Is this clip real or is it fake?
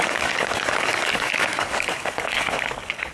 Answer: fake